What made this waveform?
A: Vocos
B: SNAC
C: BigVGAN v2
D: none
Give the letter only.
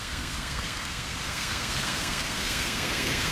B